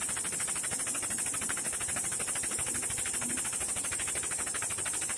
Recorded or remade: recorded